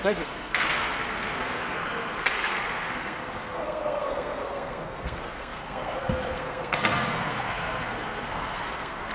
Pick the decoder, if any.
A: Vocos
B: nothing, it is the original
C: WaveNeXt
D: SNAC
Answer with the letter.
D